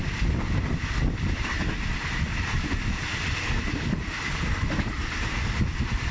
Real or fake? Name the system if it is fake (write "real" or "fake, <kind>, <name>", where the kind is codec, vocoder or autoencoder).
real